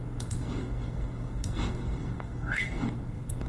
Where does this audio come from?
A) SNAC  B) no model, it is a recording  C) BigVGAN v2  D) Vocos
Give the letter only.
A